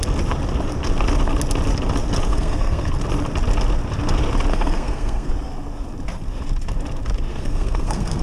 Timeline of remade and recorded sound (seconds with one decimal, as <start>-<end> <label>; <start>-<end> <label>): 0.0-2.3 recorded; 2.3-2.9 remade; 2.9-4.5 recorded; 4.5-5.3 remade; 5.3-7.3 recorded; 7.3-8.2 remade